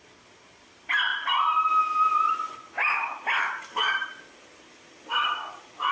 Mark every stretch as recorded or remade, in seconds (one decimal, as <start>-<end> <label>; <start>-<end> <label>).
0.0-5.9 recorded